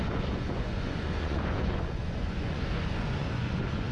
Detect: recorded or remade remade